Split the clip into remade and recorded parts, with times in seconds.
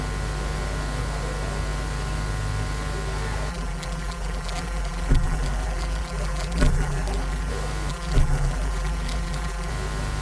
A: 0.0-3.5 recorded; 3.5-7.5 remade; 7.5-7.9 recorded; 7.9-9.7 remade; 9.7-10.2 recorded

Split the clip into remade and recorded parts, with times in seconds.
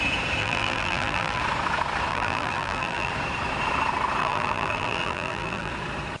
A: 0.0-0.4 recorded; 0.4-1.4 remade; 1.4-2.1 recorded; 2.1-3.1 remade; 3.1-4.2 recorded; 4.2-5.7 remade; 5.7-6.2 recorded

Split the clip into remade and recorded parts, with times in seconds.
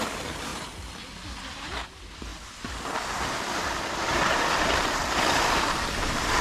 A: 0.0-0.5 remade; 0.5-1.3 recorded; 1.3-2.3 remade; 2.3-3.9 recorded; 3.9-6.4 remade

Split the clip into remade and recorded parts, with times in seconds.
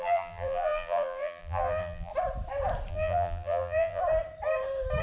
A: 0.0-2.1 remade; 2.1-2.9 recorded; 2.9-4.0 remade; 4.0-5.0 recorded